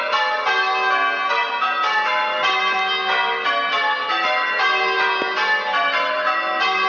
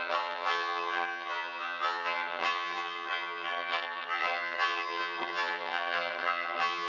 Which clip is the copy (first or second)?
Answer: second